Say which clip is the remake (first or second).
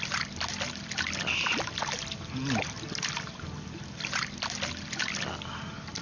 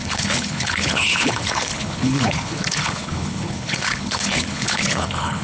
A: second